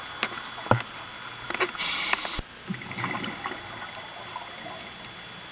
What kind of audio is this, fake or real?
real